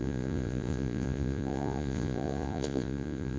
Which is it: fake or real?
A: fake